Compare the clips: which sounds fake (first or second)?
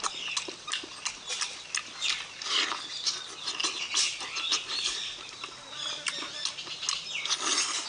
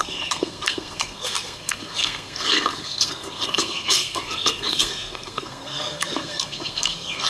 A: second